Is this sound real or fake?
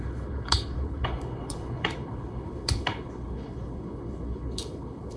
fake